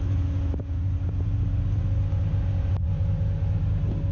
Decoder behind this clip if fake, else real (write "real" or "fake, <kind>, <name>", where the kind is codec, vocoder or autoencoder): real